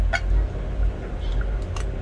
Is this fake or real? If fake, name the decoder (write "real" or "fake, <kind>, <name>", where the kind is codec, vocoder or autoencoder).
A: real